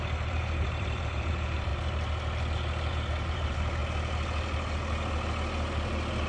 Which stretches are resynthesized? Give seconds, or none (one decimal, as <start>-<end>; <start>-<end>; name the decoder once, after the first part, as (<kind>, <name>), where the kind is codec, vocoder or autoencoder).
0.0-1.7 (vocoder, BigVGAN v2); 2.9-3.8